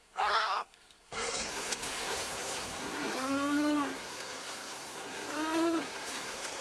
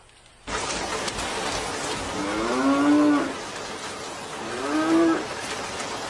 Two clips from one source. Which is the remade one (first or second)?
first